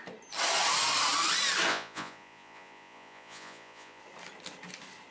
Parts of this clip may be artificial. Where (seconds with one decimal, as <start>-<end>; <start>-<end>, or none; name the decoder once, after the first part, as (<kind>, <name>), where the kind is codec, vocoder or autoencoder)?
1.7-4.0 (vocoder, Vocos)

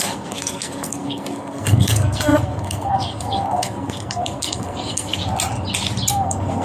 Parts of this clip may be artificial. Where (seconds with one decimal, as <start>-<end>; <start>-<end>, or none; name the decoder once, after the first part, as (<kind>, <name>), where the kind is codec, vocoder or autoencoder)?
0.0-5.2 (codec, SNAC); 6.1-6.6

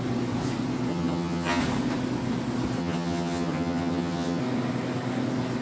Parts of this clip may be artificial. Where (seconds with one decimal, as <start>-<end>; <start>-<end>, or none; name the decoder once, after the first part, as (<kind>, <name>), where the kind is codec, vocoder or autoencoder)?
0.9-1.6 (vocoder, HiFi-GAN); 2.8-4.4

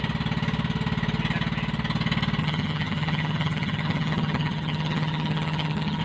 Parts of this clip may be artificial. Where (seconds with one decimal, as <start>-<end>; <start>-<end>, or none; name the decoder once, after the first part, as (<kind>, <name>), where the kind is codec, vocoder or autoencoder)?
2.4-6.0 (vocoder, HiFi-GAN)

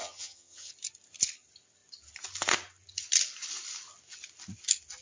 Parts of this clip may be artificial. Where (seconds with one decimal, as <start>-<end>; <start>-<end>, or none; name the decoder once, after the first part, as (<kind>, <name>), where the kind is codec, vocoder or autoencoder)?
0.0-0.7 (vocoder, HiFi-GAN)

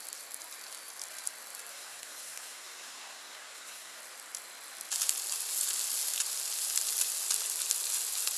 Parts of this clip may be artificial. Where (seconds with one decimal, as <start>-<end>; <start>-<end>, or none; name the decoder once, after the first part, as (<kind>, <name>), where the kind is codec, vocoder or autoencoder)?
1.7-4.0 (codec, SNAC)

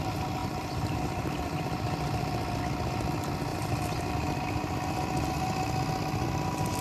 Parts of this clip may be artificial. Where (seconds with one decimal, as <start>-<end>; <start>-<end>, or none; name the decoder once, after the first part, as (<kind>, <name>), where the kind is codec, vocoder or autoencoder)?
0.4-2.6 (vocoder, BigVGAN v2); 3.5-4.1